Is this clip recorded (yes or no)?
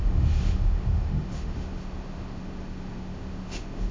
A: no